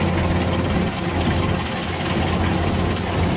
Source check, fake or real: real